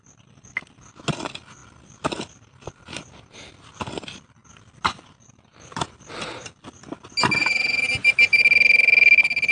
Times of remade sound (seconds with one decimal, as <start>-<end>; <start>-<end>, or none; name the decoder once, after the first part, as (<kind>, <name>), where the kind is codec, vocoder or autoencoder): 7.4-8.4 (vocoder, BigVGAN v2)